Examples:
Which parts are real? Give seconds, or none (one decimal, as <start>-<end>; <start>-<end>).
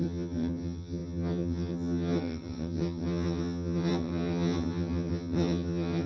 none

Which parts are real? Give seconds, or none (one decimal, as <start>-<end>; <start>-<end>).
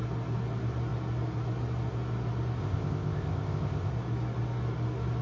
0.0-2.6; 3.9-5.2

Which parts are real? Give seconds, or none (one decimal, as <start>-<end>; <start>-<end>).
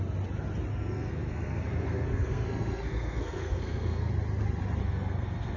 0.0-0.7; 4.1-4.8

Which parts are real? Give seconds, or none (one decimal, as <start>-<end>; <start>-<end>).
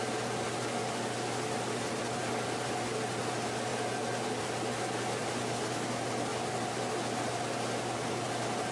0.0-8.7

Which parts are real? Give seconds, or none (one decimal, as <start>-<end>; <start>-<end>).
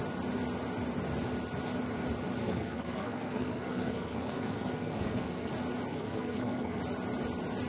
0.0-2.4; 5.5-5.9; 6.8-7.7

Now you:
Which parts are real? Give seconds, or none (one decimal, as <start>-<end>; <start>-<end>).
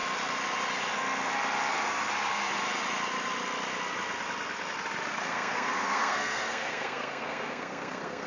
0.0-5.1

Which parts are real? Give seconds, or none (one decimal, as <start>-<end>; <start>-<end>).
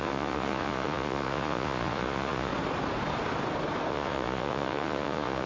2.5-3.9